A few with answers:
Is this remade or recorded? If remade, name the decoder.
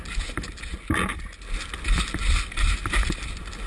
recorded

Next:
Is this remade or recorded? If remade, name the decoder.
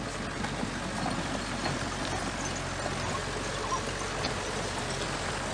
recorded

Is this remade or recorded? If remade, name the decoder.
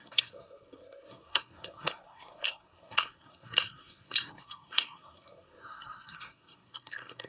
remade, codec, SNAC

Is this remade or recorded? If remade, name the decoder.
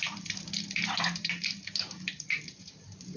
remade, vocoder, BigVGAN v2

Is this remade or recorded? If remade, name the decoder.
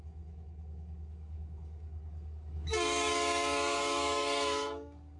remade, codec, DAC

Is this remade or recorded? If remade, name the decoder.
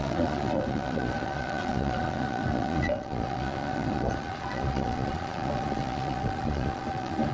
remade, vocoder, Vocos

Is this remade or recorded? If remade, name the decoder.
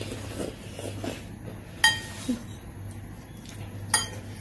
recorded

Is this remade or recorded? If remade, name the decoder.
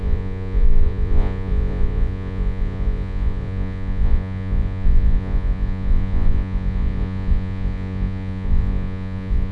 remade, vocoder, Vocos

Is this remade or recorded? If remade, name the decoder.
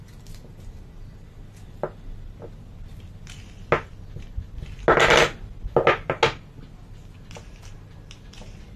recorded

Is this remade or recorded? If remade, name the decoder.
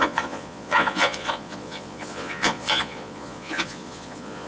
remade, vocoder, Vocos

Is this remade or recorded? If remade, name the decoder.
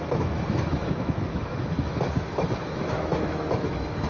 remade, autoencoder, DAC-VAE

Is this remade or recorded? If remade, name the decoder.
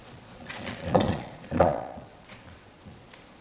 remade, vocoder, Vocos